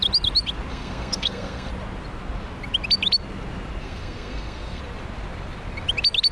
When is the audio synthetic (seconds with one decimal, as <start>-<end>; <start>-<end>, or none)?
0.7-1.7; 3.8-4.8